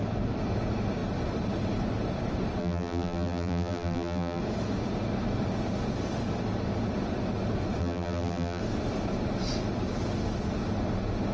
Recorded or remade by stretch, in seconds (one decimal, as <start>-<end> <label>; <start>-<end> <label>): 0.0-2.6 recorded; 2.6-4.4 remade; 4.4-7.8 recorded; 7.8-8.6 remade; 8.6-11.3 recorded